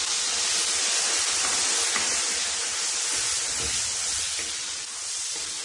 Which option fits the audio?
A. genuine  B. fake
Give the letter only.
A